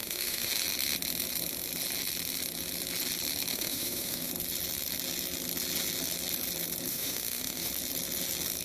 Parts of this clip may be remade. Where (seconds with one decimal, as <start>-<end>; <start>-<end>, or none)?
0.0-0.5; 3.5-4.3; 6.9-7.7